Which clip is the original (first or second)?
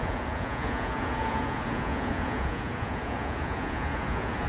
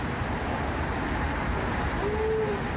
second